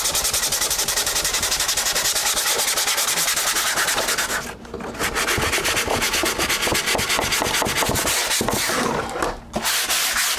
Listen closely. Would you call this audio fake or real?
real